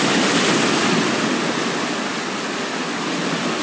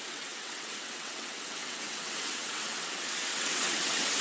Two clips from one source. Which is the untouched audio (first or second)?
first